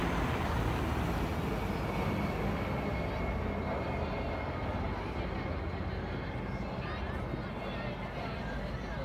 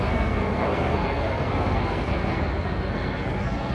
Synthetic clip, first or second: second